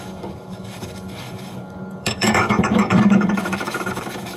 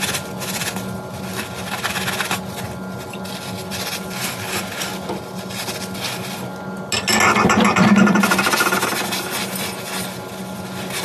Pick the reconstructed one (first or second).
first